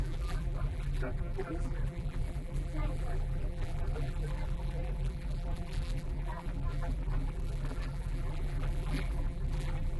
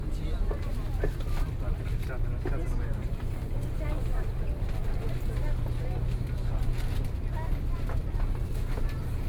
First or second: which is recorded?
second